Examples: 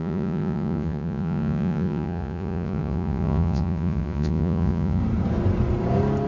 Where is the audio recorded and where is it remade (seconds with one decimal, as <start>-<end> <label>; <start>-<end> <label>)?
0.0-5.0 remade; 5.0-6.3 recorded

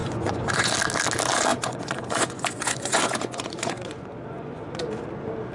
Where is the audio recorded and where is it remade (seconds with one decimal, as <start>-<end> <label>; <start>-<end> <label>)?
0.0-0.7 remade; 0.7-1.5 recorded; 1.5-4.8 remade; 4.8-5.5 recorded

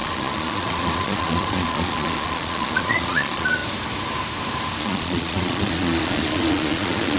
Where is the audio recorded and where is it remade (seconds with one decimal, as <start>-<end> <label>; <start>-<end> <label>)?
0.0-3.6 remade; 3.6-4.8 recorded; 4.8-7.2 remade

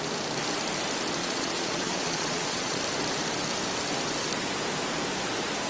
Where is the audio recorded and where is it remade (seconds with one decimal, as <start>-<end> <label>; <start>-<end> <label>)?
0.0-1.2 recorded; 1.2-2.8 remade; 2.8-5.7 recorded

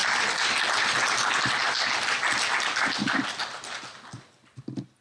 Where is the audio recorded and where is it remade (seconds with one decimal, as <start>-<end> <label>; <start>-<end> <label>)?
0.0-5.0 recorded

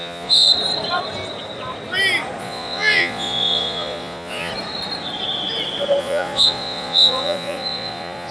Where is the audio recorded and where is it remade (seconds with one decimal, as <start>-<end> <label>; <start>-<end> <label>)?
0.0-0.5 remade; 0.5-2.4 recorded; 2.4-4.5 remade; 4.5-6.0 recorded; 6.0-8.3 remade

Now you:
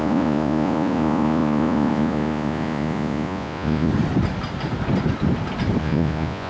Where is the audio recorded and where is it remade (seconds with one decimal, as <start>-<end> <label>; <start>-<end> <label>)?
0.0-3.9 remade; 3.9-5.8 recorded; 5.8-6.5 remade

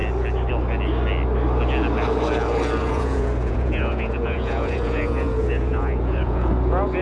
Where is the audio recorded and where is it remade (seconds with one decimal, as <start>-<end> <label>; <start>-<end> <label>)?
0.0-2.8 recorded; 2.8-6.5 remade; 6.5-7.0 recorded